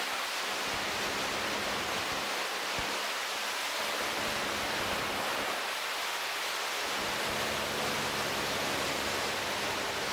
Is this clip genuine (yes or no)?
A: yes